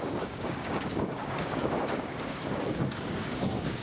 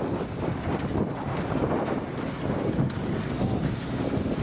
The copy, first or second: first